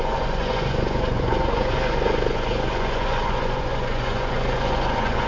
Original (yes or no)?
no